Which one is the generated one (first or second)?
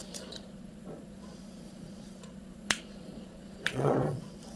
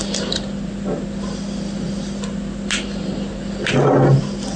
first